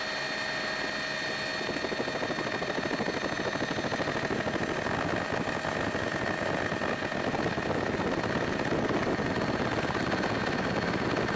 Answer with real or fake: real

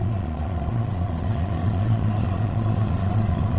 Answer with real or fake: fake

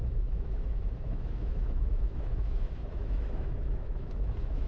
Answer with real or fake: fake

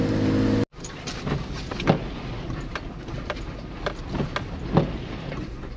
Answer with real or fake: real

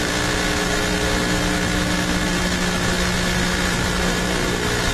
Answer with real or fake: fake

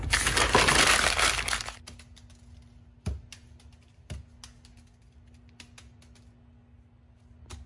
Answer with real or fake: real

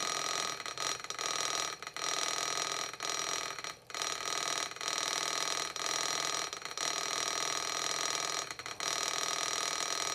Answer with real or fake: real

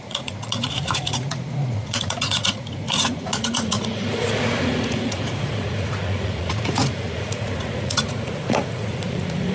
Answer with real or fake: fake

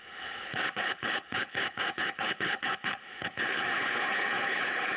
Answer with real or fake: fake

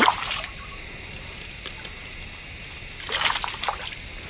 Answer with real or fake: real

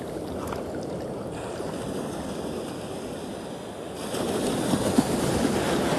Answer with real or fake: real